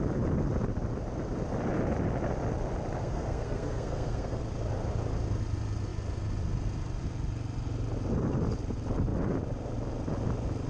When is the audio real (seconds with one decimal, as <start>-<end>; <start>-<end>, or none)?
0.0-3.0; 4.4-10.7